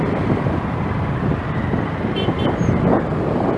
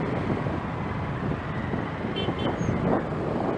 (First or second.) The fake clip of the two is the first